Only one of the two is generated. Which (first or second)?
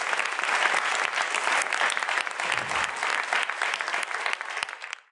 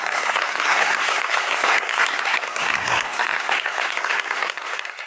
second